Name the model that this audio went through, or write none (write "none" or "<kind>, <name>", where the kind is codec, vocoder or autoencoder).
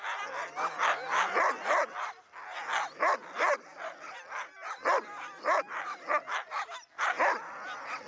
none